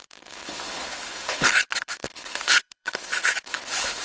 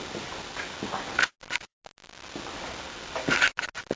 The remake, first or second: first